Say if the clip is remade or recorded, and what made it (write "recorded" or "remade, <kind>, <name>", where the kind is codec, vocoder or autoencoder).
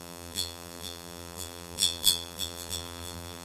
remade, vocoder, BigVGAN v2